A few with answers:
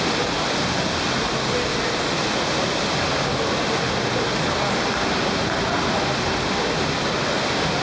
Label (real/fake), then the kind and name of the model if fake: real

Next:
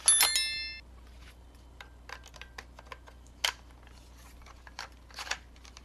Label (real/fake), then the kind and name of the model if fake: real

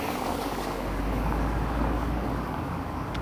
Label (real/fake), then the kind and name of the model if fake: fake, codec, DAC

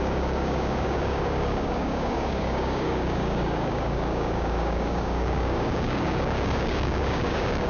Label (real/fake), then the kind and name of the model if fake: fake, codec, DAC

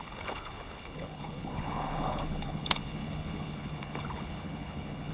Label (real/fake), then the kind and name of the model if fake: fake, codec, HILCodec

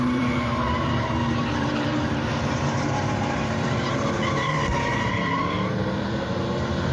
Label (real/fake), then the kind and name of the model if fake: fake, vocoder, BigVGAN v2